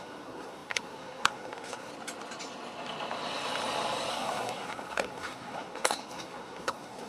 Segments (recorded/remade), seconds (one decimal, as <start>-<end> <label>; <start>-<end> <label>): 0.0-1.9 remade; 1.9-4.1 recorded; 4.1-7.1 remade